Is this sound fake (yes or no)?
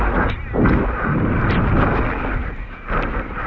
no